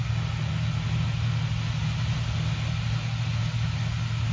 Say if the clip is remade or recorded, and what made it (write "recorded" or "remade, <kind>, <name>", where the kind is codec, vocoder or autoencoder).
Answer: recorded